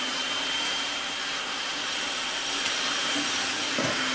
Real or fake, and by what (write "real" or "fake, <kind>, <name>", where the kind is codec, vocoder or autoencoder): fake, vocoder, BigVGAN v2